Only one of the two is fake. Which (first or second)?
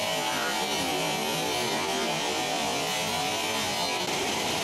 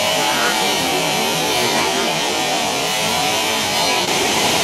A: second